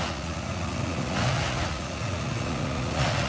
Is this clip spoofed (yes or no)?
yes